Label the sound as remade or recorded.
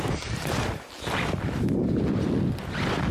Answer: recorded